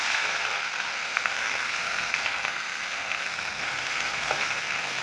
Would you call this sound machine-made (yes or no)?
yes